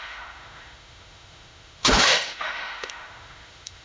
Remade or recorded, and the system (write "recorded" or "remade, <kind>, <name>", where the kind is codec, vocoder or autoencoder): remade, autoencoder, DAC-VAE